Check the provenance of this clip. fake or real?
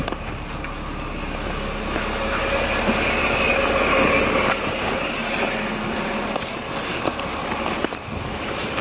real